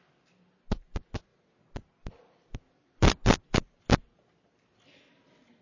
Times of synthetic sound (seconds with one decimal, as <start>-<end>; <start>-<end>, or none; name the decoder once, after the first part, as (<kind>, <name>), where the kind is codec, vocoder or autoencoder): none